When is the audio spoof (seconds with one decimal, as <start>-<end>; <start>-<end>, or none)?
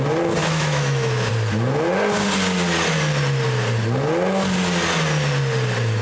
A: 0.4-1.3